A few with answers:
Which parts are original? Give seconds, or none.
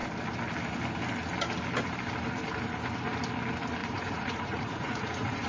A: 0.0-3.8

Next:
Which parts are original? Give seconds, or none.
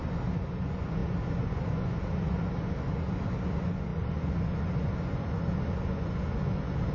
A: none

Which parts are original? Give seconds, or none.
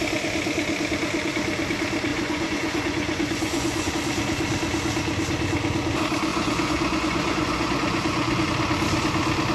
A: 0.0-2.1; 3.9-6.3; 8.5-9.5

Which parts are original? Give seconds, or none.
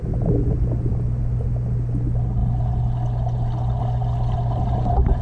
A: 0.0-5.2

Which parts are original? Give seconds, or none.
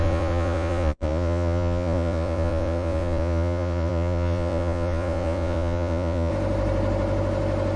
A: 6.3-7.8